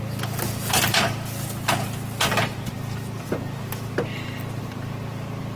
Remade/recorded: recorded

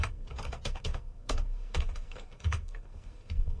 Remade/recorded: remade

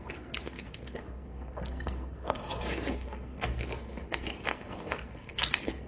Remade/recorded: remade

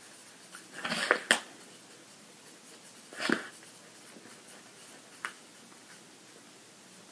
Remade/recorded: recorded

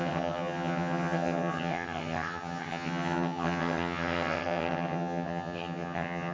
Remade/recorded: remade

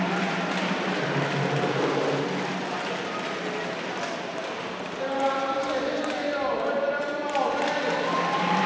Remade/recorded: recorded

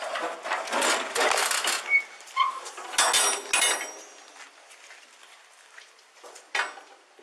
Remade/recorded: recorded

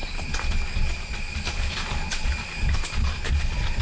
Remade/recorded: recorded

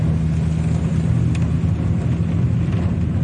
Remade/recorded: recorded